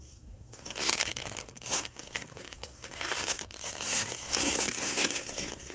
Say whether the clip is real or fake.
fake